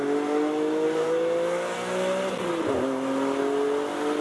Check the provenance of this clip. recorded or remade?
recorded